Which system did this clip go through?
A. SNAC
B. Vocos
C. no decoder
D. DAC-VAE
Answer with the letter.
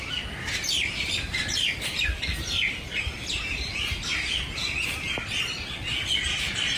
C